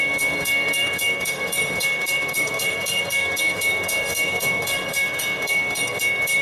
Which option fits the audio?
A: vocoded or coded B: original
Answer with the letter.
A